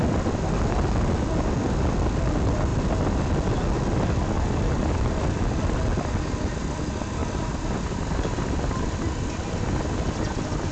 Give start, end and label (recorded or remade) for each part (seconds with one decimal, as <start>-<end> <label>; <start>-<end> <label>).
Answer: 0.0-10.7 recorded